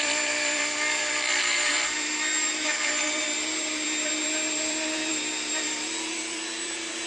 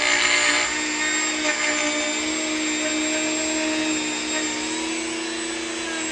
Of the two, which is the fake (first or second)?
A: first